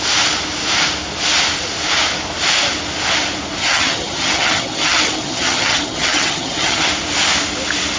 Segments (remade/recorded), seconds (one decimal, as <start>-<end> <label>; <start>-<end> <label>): 0.0-3.6 recorded; 3.6-6.9 remade; 6.9-8.0 recorded